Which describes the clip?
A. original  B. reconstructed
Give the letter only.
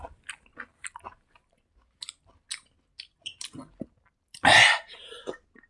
A